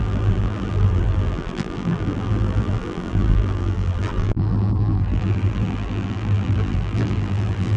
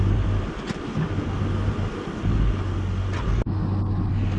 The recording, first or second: second